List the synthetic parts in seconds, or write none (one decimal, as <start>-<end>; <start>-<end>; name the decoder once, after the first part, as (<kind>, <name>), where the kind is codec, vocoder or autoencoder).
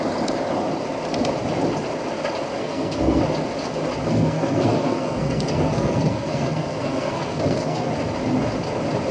2.6-3.2 (codec, SNAC); 4.0-7.9